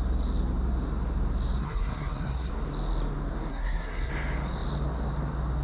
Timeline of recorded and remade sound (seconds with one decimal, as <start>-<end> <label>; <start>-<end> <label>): 0.0-1.6 recorded; 1.6-2.5 remade; 2.5-3.5 recorded; 3.5-4.1 remade; 4.1-5.6 recorded